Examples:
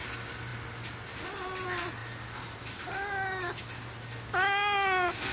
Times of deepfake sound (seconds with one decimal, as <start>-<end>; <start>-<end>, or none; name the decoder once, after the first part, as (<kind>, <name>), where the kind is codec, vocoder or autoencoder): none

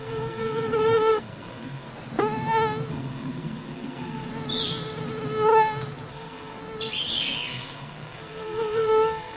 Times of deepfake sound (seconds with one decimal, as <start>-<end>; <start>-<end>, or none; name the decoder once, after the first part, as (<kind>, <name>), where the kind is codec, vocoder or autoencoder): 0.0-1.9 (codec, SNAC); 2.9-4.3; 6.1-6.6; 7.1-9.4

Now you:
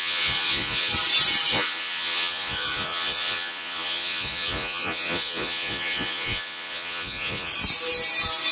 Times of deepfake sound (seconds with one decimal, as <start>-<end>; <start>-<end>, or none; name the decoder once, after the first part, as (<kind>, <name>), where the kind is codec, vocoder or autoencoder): 0.0-0.9 (vocoder, Vocos); 1.5-7.5